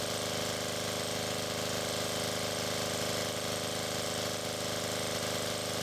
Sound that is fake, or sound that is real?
real